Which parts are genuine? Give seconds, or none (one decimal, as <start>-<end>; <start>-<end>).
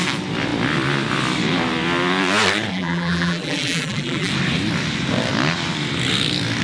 0.0-2.7; 4.3-6.6